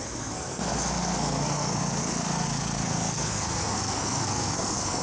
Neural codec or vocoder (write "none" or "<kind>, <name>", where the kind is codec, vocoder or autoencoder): codec, SNAC